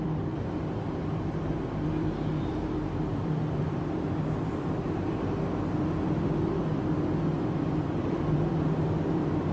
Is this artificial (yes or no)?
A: yes